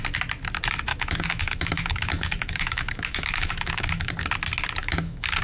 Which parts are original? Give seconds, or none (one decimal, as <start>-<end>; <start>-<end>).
0.0-0.9; 4.1-4.8